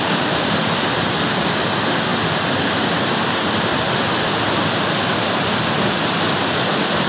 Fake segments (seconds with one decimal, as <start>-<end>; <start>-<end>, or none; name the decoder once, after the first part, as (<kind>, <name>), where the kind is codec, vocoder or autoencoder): 0.0-3.7 (vocoder, BigVGAN v2); 5.3-7.1